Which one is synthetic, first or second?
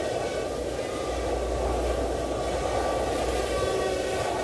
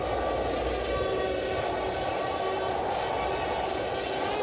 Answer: first